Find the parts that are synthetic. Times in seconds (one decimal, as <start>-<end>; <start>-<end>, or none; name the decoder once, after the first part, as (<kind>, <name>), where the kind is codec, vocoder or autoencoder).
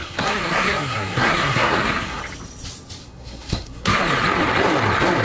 0.0-2.2 (codec, SNAC); 3.0-4.0